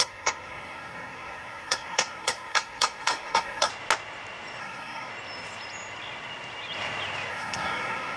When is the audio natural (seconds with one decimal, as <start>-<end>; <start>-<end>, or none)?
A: 3.7-4.6; 5.1-7.3